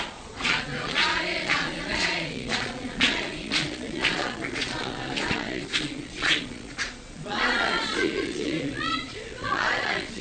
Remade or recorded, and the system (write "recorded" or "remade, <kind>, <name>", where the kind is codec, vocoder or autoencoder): remade, vocoder, Vocos